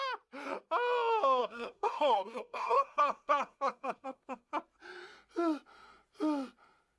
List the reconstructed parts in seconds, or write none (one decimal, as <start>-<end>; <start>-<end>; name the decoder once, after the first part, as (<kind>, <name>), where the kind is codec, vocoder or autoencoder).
1.4-4.5 (codec, SNAC)